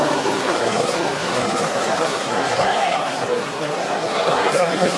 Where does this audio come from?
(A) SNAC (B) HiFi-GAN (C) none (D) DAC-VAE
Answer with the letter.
A